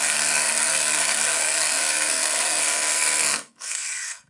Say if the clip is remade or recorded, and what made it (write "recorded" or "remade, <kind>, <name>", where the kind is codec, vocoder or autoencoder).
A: remade, codec, SNAC